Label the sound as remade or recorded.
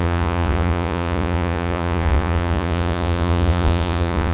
remade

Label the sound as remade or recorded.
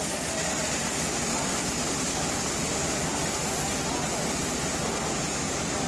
recorded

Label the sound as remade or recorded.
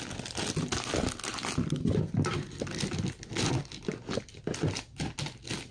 recorded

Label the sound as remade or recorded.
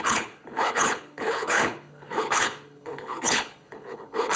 remade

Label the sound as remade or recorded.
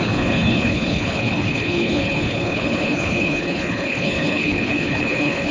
remade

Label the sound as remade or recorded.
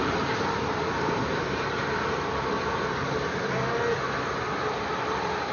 recorded